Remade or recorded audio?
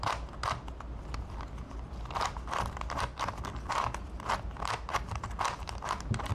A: recorded